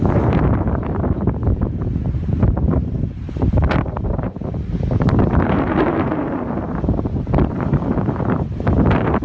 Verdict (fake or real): fake